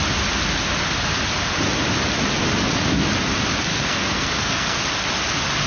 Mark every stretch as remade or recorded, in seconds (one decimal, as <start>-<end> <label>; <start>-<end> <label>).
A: 0.0-3.7 recorded; 3.7-4.8 remade; 4.8-5.7 recorded